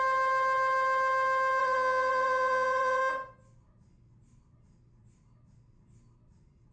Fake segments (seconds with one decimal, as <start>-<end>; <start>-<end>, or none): 1.6-3.0